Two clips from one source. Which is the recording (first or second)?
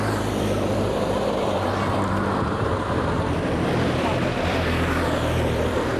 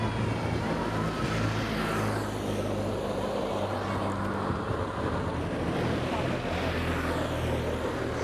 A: second